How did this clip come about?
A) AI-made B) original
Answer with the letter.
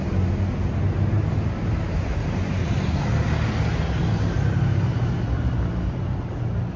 B